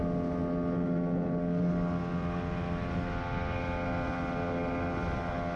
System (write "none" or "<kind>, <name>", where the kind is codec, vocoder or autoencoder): none